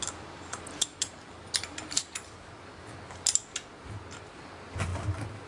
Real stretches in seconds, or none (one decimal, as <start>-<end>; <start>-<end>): 0.0-5.5